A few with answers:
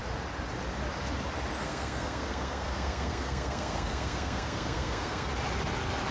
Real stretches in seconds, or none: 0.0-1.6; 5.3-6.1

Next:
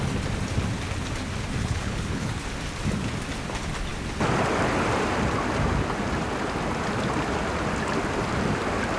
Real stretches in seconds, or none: 0.0-1.6; 2.3-9.0

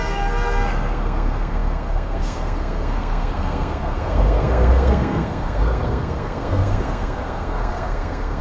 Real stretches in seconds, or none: none

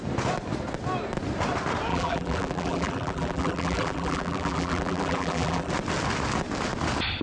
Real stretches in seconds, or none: 0.0-1.9; 5.7-7.2

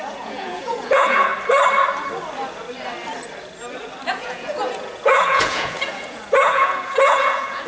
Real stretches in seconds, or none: 1.3-4.1

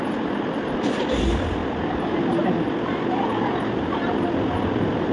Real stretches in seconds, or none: 0.0-5.1